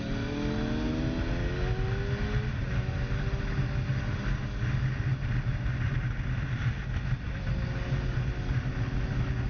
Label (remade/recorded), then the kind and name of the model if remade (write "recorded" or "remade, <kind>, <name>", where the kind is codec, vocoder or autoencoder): recorded